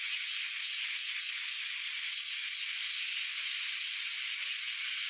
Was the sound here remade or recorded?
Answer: recorded